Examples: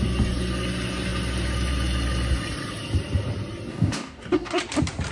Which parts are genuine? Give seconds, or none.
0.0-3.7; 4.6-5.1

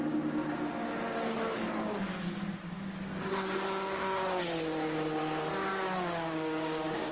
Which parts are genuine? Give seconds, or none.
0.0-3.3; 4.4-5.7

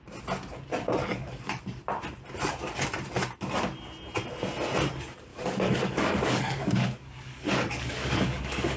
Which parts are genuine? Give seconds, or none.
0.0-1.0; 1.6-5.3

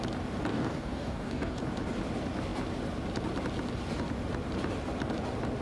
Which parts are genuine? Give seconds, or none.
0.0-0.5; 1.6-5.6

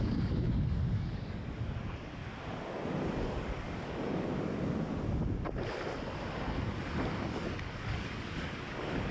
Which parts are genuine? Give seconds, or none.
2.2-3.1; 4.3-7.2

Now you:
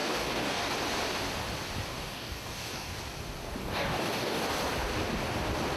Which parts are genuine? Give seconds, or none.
0.7-1.9; 3.0-3.6; 4.4-5.8